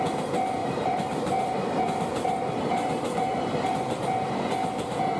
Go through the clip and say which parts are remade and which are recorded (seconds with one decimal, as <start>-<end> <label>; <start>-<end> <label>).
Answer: 0.0-0.6 recorded; 0.6-3.7 remade; 3.7-5.2 recorded